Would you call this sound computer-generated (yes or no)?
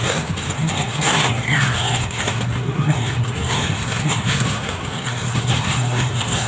yes